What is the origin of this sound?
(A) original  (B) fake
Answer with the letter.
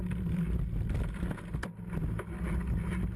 A